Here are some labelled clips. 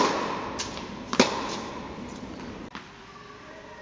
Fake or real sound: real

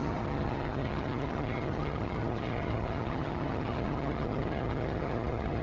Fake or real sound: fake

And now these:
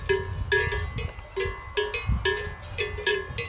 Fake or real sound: real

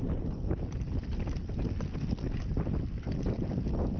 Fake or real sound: real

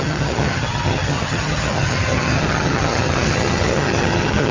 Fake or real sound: fake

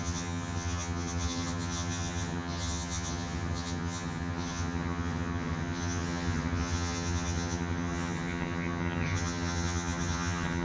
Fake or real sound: fake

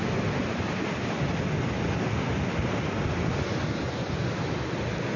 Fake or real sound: real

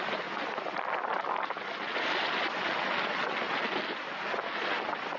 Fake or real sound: real